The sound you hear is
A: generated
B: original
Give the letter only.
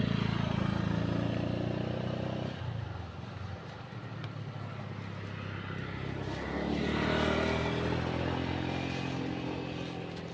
B